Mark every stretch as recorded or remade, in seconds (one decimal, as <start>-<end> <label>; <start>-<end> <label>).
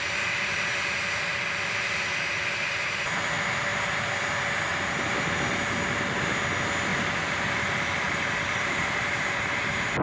0.0-1.3 recorded; 1.3-2.9 remade; 2.9-6.9 recorded; 6.9-9.4 remade; 9.4-10.0 recorded